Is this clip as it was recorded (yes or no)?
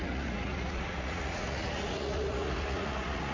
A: no